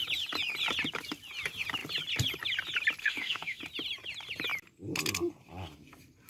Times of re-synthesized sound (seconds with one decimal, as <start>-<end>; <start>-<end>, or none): 3.0-3.6